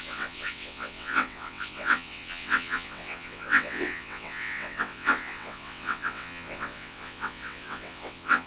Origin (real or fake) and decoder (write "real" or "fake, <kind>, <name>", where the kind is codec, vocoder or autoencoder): fake, vocoder, WaveNeXt